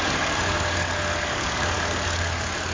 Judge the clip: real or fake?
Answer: fake